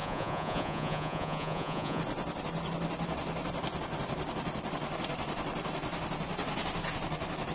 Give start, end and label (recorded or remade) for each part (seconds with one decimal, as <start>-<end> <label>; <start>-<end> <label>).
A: 0.0-2.0 remade; 2.0-7.5 recorded

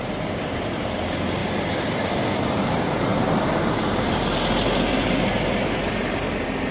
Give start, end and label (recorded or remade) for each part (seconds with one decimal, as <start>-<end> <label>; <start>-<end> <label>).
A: 0.0-6.7 recorded

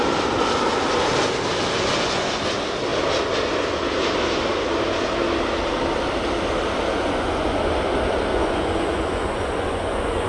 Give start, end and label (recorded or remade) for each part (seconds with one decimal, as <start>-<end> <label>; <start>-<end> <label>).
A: 0.0-1.8 recorded; 1.8-2.4 remade; 2.4-6.9 recorded; 6.9-7.8 remade; 7.8-8.3 recorded; 8.3-10.3 remade

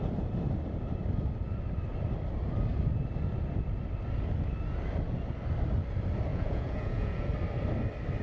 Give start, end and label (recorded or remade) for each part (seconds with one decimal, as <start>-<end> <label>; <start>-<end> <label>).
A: 0.0-6.3 recorded; 6.3-7.3 remade; 7.3-8.2 recorded

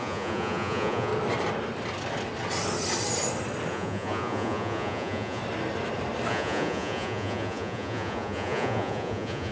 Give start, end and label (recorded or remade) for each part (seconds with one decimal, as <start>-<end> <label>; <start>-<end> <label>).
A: 0.0-1.1 remade; 1.1-3.7 recorded; 3.7-5.4 remade; 5.4-6.3 recorded; 6.3-9.5 remade

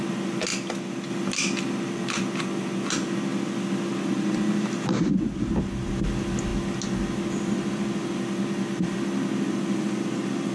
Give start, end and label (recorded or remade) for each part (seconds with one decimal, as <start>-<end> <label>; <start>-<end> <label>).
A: 0.0-10.5 recorded

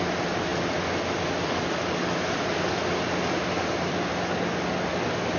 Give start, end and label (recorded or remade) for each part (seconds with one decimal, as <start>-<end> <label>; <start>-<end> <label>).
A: 0.0-5.4 recorded

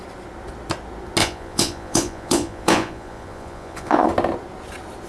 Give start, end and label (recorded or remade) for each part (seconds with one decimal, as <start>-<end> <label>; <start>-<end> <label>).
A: 0.0-1.2 recorded; 1.2-4.1 remade; 4.1-5.1 recorded